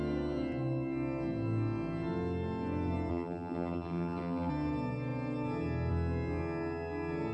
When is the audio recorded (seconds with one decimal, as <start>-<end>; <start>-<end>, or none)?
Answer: 0.0-3.1; 4.5-7.3

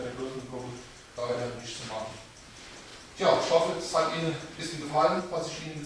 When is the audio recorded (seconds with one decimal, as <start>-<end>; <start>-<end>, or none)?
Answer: 0.7-1.2; 2.1-2.9; 5.2-5.9

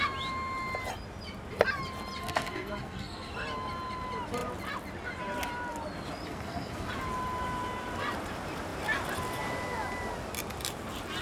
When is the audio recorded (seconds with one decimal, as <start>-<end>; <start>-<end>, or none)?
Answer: 0.0-2.2; 3.3-6.3; 6.9-11.2

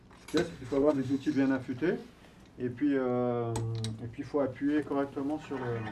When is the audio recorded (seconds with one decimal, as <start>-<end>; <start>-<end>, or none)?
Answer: 0.0-0.5; 1.3-5.9

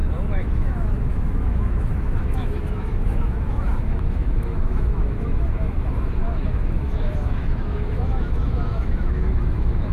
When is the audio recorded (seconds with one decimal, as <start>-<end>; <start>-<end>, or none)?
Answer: none

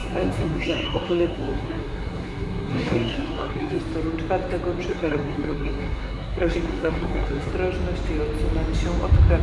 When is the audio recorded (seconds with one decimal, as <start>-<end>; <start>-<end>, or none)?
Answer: 3.8-4.9; 7.5-9.4